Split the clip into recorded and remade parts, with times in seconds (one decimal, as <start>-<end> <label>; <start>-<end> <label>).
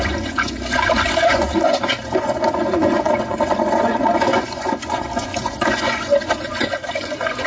0.0-7.5 remade